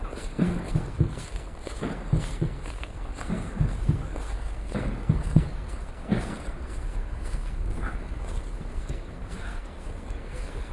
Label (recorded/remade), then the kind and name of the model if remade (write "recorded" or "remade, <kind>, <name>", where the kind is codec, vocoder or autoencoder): remade, codec, SNAC